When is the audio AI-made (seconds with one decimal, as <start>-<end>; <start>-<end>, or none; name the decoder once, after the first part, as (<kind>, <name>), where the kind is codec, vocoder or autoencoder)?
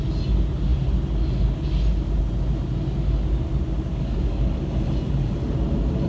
3.9-4.7 (codec, DAC)